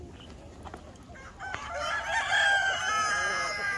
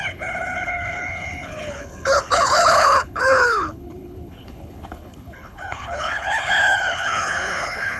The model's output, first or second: second